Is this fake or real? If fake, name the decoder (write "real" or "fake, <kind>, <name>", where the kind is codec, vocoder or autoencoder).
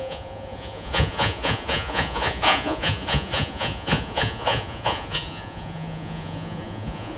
fake, vocoder, Vocos